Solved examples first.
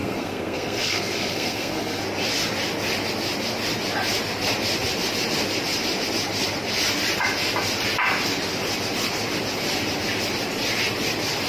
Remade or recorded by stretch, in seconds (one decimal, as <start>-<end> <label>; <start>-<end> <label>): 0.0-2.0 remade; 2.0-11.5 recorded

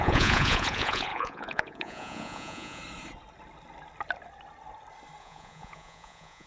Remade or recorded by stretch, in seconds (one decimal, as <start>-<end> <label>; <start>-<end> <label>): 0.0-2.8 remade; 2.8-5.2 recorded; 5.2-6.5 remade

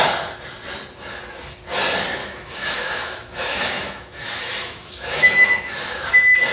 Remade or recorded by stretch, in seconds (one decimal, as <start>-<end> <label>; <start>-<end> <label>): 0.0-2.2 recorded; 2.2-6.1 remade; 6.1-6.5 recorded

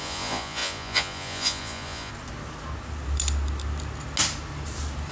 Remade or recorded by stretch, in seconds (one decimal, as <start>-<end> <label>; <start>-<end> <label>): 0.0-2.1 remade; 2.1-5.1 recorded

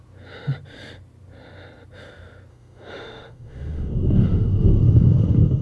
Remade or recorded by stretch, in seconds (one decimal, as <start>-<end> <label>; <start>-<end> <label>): 0.0-2.5 recorded; 2.5-5.6 remade

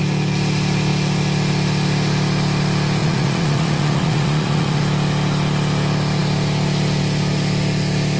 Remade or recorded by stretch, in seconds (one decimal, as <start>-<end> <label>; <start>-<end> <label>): 0.0-3.0 recorded; 3.0-4.8 remade; 4.8-8.2 recorded

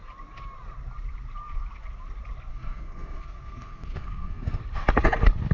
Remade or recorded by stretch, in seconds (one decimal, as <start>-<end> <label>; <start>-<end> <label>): 0.0-2.5 recorded; 2.5-4.6 remade; 4.6-5.5 recorded

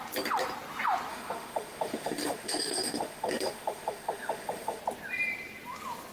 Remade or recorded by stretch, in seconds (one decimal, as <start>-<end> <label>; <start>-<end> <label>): 0.0-1.1 recorded; 1.1-4.8 remade; 4.8-6.1 recorded